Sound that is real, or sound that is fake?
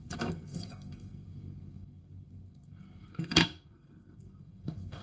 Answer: fake